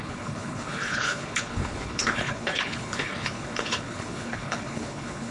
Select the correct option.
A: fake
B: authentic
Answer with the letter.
A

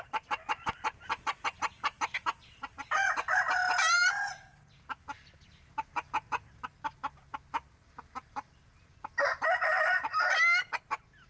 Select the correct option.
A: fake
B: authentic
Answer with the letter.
B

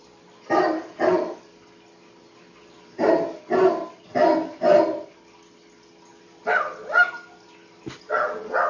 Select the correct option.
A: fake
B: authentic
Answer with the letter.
B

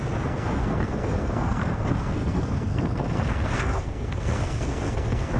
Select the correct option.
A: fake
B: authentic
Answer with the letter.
A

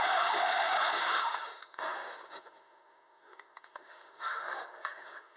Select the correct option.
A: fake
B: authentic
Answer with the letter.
A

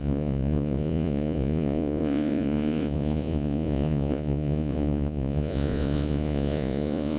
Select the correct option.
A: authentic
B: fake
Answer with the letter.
B